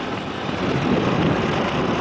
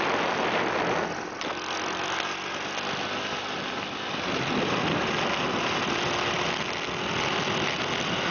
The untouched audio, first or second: second